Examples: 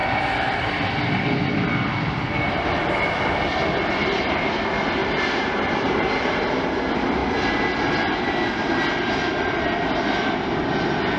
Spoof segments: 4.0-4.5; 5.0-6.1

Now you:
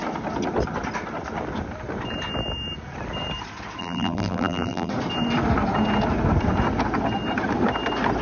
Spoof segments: 3.8-4.9

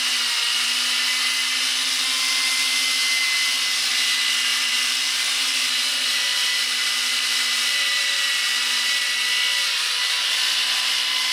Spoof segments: 4.5-8.9

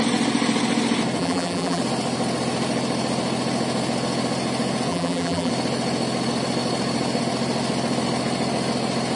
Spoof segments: 1.2-1.8; 4.9-5.5

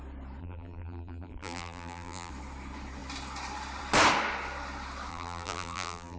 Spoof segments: 0.4-2.3; 5.1-6.2